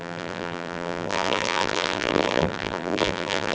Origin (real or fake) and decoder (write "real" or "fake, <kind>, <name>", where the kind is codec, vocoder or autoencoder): fake, vocoder, BigVGAN v2